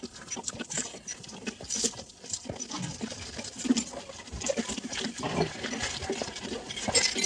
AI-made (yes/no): no